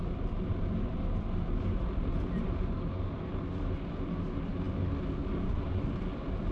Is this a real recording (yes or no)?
yes